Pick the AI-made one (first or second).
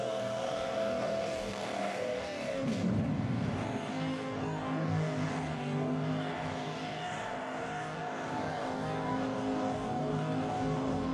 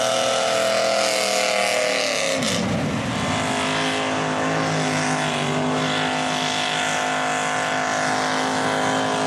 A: first